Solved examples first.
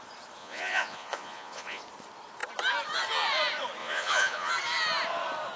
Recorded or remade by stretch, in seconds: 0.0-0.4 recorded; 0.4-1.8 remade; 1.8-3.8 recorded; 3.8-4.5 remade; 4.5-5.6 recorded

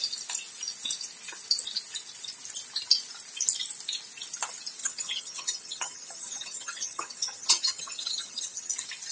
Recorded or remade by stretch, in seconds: 0.0-4.8 recorded; 4.8-8.7 remade; 8.7-9.1 recorded

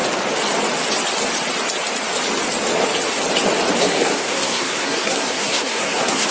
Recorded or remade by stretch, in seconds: 0.0-3.8 recorded; 3.8-6.3 remade

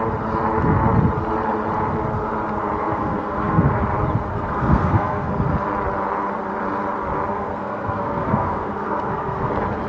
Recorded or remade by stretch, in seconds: 0.0-2.8 recorded; 2.8-3.8 remade; 3.8-4.3 recorded; 4.3-5.3 remade; 5.3-7.3 recorded; 7.3-9.5 remade; 9.5-9.9 recorded